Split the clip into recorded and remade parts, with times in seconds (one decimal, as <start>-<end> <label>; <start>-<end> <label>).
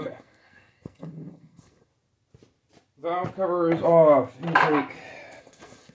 0.0-1.9 remade; 1.9-5.4 recorded; 5.4-5.9 remade